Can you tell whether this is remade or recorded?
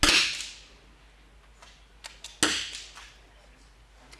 recorded